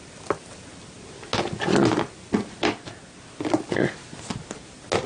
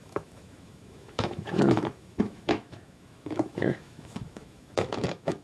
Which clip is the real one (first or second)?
first